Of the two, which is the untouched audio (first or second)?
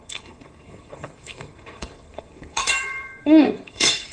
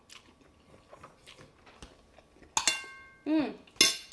second